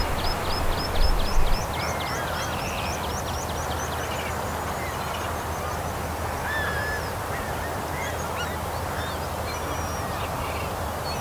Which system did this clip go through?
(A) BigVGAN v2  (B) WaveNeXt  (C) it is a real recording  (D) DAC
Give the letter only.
C